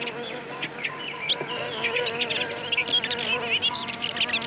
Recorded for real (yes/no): yes